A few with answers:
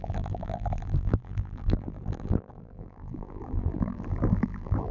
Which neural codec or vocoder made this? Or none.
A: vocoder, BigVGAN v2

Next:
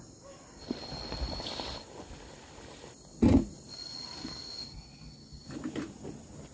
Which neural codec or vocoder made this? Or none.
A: none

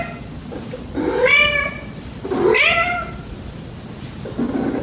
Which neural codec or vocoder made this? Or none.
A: none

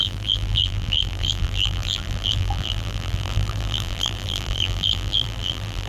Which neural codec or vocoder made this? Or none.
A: vocoder, BigVGAN v2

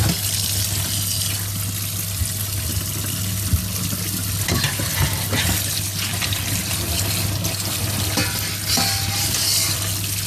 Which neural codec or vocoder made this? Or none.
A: none